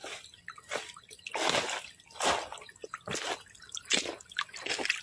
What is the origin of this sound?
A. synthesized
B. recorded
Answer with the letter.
B